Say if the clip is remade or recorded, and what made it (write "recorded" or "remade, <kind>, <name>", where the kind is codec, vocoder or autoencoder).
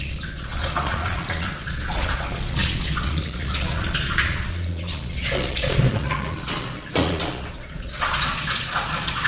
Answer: remade, vocoder, Vocos